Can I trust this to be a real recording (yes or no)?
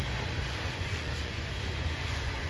no